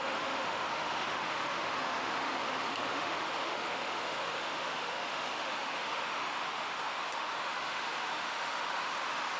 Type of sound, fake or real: fake